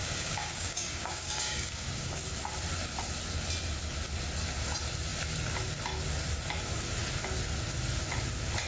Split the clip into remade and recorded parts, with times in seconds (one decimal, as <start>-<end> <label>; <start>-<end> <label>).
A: 0.0-2.2 remade; 2.2-8.7 recorded